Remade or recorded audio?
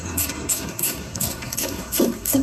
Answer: remade